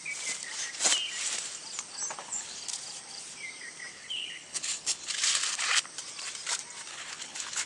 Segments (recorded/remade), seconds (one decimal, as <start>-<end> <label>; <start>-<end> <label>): 0.0-2.2 recorded; 2.2-2.7 remade; 2.7-3.9 recorded; 3.9-5.1 remade; 5.1-6.9 recorded; 6.9-7.7 remade